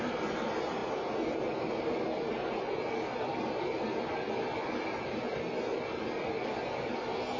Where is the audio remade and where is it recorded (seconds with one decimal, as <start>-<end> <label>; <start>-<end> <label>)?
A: 0.0-7.4 recorded